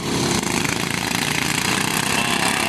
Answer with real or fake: fake